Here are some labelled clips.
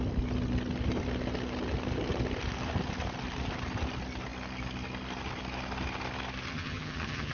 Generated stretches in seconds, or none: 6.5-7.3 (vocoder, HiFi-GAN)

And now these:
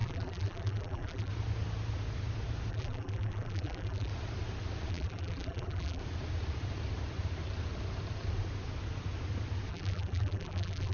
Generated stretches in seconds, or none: 0.0-1.3 (vocoder, BigVGAN v2); 2.7-4.1; 4.9-6.0; 9.7-10.9